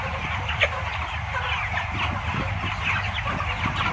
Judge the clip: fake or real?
real